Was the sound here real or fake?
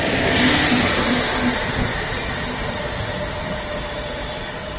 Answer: fake